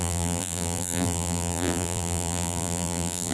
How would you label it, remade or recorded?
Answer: remade